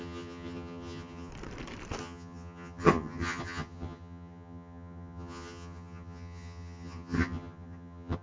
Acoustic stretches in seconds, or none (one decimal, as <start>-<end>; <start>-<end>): 1.3-2.0